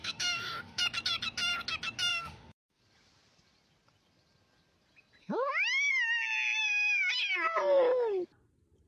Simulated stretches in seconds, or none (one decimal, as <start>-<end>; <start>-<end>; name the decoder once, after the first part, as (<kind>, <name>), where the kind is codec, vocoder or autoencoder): 0.0-0.8 (autoencoder, DAC-VAE); 2.1-2.8; 5.2-5.9; 6.6-7.1